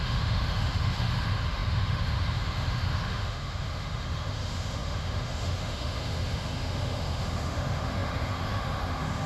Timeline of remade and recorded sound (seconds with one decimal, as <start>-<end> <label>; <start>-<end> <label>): 0.0-9.3 remade

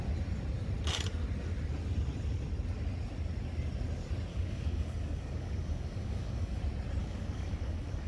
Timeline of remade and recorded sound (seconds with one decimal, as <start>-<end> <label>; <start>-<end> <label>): 0.0-4.3 recorded; 4.3-6.6 remade; 6.6-7.0 recorded; 7.0-8.1 remade

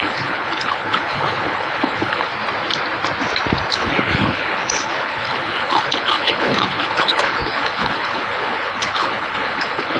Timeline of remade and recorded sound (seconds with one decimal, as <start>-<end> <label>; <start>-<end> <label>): 0.0-2.3 remade; 2.3-3.7 recorded; 3.7-10.0 remade

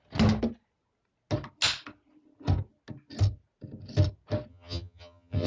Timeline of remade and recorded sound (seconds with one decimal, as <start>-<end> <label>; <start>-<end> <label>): 0.0-4.5 recorded; 4.5-5.5 remade

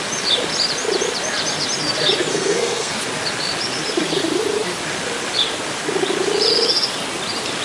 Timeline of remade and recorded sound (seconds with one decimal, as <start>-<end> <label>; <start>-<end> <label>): 0.0-2.3 recorded; 2.3-3.0 remade; 3.0-7.6 recorded